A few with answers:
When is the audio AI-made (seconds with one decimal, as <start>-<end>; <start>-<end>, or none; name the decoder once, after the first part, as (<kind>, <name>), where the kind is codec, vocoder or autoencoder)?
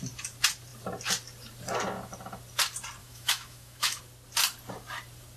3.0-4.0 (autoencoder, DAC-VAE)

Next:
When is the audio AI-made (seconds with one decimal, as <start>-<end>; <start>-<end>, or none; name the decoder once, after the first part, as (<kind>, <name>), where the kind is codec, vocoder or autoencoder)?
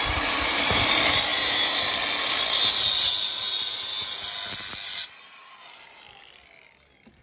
0.0-1.3 (vocoder, BigVGAN v2); 5.6-7.2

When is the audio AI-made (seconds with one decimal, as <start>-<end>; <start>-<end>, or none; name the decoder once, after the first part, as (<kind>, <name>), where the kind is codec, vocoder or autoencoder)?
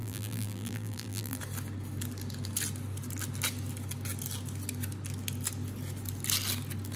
0.0-1.4 (vocoder, BigVGAN v2)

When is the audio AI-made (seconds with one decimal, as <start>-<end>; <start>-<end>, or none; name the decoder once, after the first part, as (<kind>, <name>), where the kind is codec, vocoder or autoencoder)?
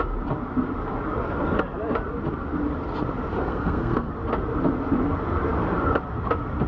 3.4-4.1 (codec, SNAC)